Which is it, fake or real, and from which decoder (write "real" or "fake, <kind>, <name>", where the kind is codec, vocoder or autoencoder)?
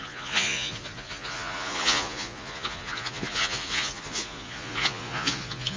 fake, vocoder, Vocos